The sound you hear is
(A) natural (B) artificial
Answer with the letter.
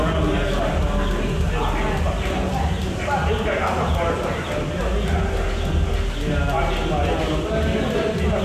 A